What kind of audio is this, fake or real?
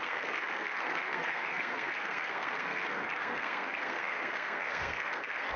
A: fake